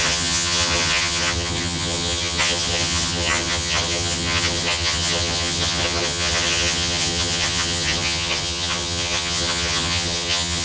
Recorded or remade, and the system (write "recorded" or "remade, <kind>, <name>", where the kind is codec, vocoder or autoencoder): remade, vocoder, HiFi-GAN